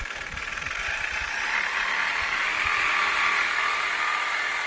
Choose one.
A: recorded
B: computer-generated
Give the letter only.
B